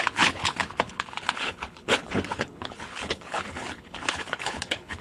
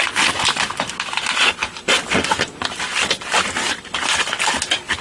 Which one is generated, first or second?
first